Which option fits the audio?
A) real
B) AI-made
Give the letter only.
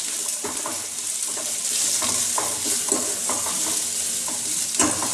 A